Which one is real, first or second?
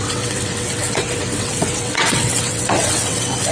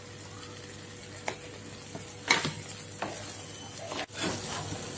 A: second